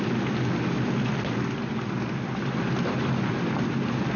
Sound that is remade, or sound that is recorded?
recorded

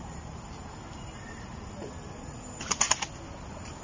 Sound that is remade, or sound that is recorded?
recorded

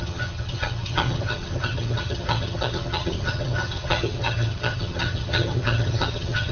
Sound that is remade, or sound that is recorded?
remade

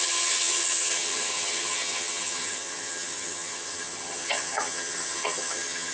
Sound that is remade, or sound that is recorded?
remade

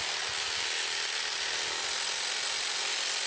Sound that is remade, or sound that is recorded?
recorded